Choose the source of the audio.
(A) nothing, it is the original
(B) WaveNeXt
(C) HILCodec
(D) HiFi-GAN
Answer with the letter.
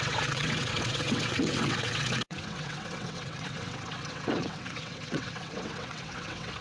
B